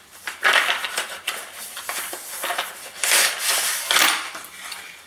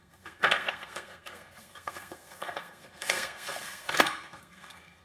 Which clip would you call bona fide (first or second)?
first